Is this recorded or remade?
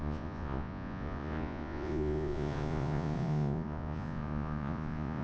remade